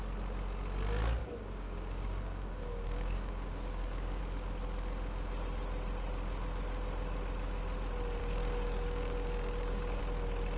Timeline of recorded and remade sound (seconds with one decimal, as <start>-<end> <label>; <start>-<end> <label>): 0.0-1.2 recorded; 1.2-4.2 remade; 4.2-8.2 recorded; 8.2-10.0 remade; 10.0-10.6 recorded